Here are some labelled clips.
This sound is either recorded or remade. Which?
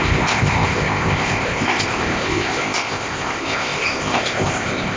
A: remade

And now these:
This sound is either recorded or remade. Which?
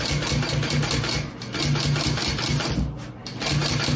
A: recorded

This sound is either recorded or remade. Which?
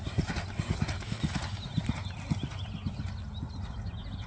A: recorded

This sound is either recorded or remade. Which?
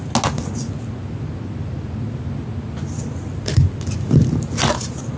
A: recorded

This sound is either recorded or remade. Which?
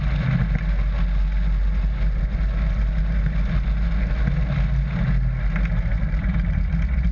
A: recorded